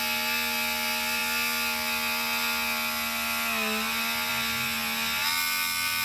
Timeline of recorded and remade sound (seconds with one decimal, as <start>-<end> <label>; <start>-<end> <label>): 0.0-6.0 recorded

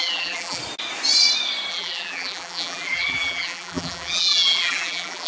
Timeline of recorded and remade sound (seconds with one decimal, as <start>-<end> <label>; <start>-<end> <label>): 0.0-0.6 remade; 0.6-1.7 recorded; 1.7-5.3 remade

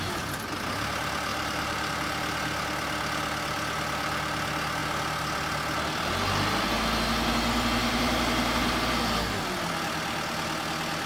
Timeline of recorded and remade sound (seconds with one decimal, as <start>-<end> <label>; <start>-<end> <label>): 0.0-1.3 recorded; 1.3-1.9 remade; 1.9-7.8 recorded; 7.8-9.0 remade; 9.0-11.1 recorded

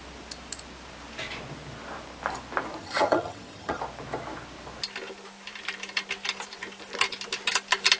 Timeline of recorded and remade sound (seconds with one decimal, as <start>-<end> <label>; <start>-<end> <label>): 0.0-2.8 recorded; 2.8-3.8 remade; 3.8-8.0 recorded

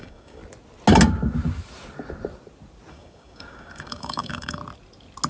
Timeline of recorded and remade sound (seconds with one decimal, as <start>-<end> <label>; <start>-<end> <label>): 0.0-0.4 remade; 0.4-2.9 recorded; 2.9-4.6 remade; 4.6-5.3 recorded

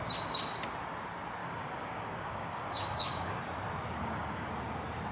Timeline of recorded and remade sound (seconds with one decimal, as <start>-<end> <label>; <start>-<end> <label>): 0.0-1.4 recorded; 1.4-3.4 remade; 3.4-4.0 recorded; 4.0-4.5 remade; 4.5-5.1 recorded

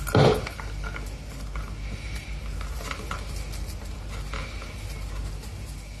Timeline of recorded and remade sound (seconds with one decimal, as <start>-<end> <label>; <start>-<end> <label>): 0.0-6.0 recorded

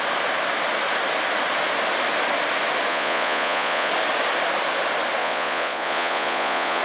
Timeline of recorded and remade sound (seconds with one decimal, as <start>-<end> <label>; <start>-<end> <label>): 0.0-2.9 recorded; 2.9-3.9 remade; 3.9-5.2 recorded; 5.2-6.8 remade